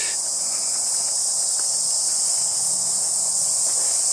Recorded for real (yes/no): no